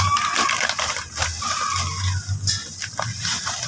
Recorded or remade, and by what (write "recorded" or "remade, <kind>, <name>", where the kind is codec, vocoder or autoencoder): recorded